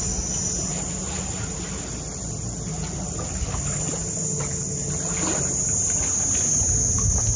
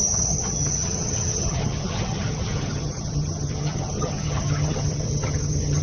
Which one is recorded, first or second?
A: first